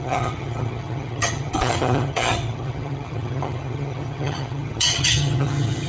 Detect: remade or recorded remade